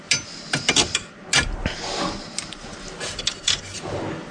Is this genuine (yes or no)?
yes